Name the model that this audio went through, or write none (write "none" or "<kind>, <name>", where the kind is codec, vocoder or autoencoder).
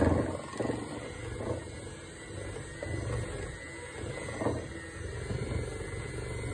none